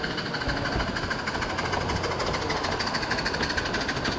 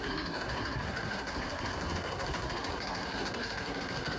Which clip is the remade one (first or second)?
second